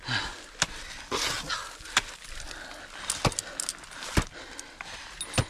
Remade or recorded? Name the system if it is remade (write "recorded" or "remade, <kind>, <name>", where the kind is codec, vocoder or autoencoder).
recorded